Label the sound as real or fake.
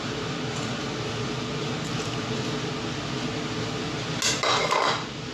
real